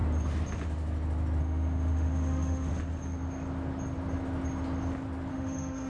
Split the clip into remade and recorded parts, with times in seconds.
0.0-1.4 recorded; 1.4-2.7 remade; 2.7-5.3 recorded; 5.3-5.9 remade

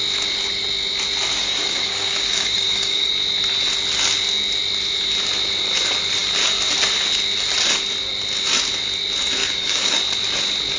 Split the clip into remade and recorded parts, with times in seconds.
0.0-1.4 recorded; 1.4-3.1 remade; 3.1-9.4 recorded; 9.4-10.0 remade; 10.0-10.8 recorded

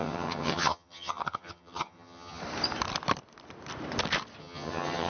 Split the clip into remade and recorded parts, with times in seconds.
0.0-2.4 remade; 2.4-4.4 recorded; 4.4-5.1 remade

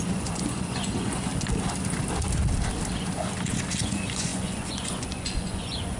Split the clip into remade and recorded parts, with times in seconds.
0.0-1.3 remade; 1.3-3.8 recorded; 3.8-6.0 remade

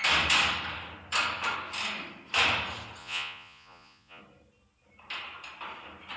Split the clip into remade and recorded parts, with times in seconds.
0.0-3.0 recorded; 3.0-4.2 remade; 4.2-6.2 recorded

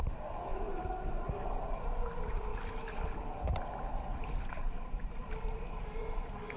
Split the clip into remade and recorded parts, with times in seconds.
0.0-0.5 recorded; 0.5-1.0 remade; 1.0-2.5 recorded; 2.5-3.2 remade; 3.2-4.1 recorded; 4.1-5.3 remade; 5.3-6.6 recorded

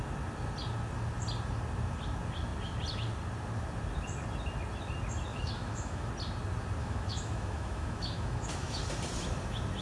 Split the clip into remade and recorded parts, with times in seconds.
0.0-5.3 recorded; 5.3-6.1 remade; 6.1-6.8 recorded; 6.8-8.8 remade; 8.8-9.8 recorded